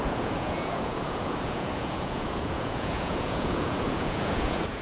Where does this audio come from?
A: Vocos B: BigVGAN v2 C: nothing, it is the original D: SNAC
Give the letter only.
A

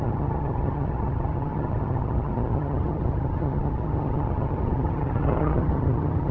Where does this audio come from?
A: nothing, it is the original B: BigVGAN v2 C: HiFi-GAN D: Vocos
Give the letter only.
C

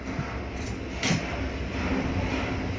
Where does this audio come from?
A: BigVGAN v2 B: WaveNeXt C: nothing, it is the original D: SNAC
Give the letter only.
C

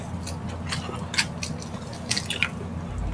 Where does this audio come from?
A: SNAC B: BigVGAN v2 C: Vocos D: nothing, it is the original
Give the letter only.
D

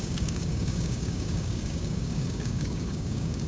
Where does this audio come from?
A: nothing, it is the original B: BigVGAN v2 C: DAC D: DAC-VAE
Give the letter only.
C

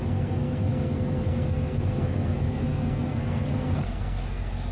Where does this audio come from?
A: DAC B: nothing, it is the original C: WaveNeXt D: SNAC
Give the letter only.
D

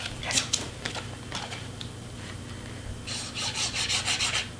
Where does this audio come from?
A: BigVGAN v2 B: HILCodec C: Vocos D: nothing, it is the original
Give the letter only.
D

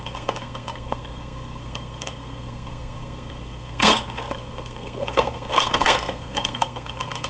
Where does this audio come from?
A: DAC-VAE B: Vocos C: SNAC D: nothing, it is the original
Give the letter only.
C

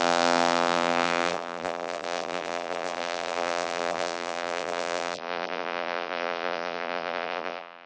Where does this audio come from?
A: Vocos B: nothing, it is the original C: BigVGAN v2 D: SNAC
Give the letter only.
C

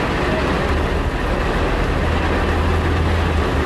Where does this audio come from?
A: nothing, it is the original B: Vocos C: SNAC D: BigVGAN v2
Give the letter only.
A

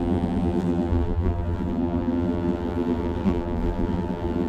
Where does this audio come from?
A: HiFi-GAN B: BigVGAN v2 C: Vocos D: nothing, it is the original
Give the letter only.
B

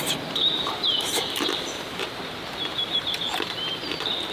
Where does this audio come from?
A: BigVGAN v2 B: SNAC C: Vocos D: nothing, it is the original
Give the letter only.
A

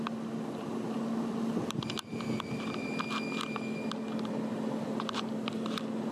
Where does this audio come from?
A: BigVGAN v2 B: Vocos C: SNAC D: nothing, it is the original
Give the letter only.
D